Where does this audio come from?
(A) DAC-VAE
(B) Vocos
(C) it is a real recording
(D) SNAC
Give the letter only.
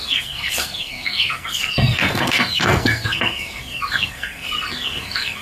D